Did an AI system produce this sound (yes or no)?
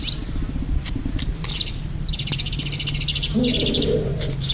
no